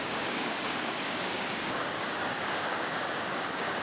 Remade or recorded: remade